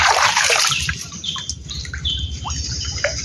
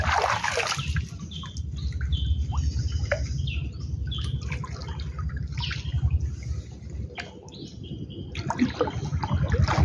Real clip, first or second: second